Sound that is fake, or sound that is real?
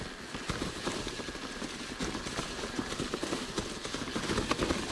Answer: real